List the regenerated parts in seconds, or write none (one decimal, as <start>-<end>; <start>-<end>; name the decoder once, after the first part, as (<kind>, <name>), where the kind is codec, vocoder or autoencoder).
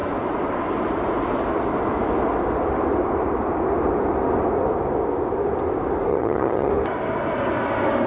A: 6.1-6.7 (vocoder, HiFi-GAN)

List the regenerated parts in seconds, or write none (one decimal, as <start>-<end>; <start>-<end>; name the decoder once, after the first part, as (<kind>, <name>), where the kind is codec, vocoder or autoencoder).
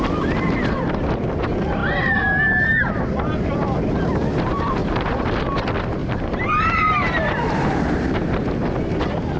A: 1.8-4.0 (vocoder, BigVGAN v2); 4.8-5.4; 6.0-8.5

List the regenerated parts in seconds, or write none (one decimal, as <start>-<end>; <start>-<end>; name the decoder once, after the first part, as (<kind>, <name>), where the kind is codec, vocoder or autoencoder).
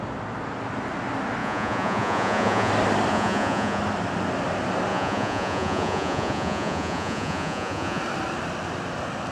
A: 1.4-2.7 (vocoder, Vocos); 3.1-3.8; 4.9-8.0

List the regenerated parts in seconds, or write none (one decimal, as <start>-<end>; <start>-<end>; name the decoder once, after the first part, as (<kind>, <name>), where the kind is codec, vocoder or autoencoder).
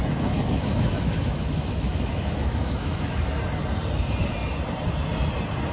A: 0.0-3.4 (autoencoder, DAC-VAE)